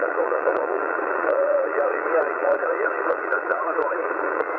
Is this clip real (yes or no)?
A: no